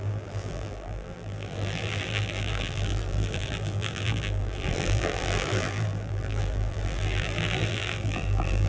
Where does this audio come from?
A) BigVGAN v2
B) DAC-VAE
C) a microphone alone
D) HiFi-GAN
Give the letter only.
A